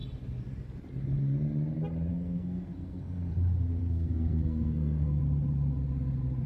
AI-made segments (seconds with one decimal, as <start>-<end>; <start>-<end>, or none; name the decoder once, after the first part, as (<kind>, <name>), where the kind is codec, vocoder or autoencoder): 2.1-3.3 (codec, SNAC); 3.8-5.2